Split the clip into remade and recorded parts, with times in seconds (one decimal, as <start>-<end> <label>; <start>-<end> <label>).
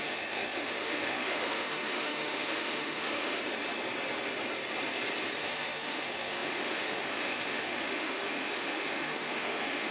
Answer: 0.0-3.4 remade; 3.4-5.4 recorded; 5.4-9.9 remade